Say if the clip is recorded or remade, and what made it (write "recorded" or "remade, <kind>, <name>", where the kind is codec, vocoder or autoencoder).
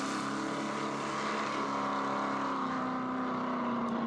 recorded